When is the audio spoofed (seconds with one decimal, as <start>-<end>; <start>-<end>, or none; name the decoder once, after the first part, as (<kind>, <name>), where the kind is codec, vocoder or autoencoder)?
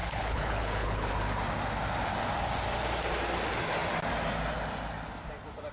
0.0-1.1 (codec, HILCodec)